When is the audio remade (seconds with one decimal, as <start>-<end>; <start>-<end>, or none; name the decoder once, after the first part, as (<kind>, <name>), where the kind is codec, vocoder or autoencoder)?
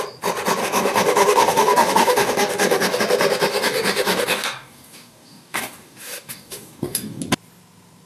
0.6-3.0 (codec, DAC); 3.5-7.2